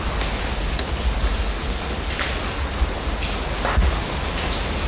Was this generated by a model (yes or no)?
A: no